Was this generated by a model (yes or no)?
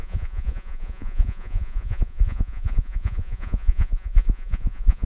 yes